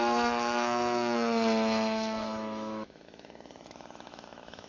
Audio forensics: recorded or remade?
remade